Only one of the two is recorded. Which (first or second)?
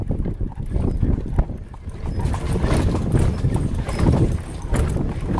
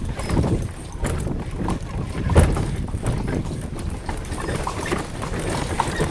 first